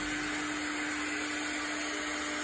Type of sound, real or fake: real